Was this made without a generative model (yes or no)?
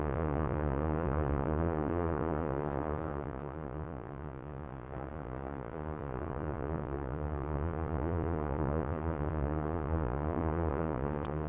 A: no